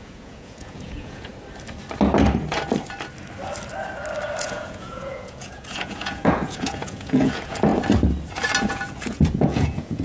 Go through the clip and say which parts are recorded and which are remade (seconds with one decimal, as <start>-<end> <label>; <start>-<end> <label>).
0.0-1.3 remade; 1.3-4.4 recorded; 4.4-7.7 remade; 7.7-8.7 recorded; 8.7-10.0 remade